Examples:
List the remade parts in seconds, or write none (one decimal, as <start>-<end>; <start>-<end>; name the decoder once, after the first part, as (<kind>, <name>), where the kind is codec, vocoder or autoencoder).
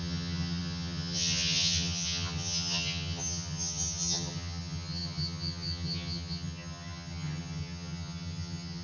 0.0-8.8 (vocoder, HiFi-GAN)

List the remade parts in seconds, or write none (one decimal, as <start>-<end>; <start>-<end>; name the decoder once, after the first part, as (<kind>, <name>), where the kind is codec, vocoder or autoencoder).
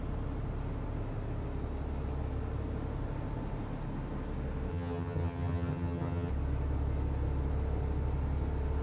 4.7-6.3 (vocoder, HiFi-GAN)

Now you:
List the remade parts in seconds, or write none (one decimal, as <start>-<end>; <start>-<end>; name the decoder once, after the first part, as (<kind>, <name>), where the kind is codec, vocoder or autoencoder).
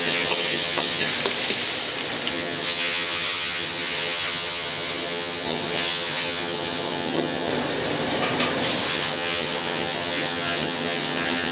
0.0-1.1 (vocoder, HiFi-GAN); 2.3-7.5; 8.9-11.5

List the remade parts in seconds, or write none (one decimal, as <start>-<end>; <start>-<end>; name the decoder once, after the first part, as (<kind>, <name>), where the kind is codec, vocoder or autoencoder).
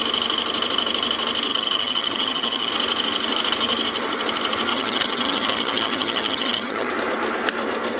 1.5-2.7 (vocoder, HiFi-GAN); 4.7-6.9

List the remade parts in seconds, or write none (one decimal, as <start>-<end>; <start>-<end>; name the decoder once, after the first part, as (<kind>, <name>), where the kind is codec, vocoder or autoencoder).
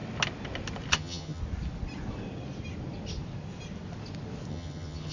0.9-1.4 (vocoder, HiFi-GAN); 4.5-5.1